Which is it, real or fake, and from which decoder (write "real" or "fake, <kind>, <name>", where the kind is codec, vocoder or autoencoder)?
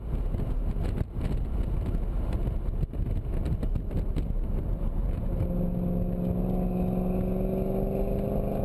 real